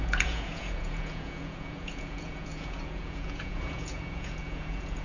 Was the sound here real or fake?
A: fake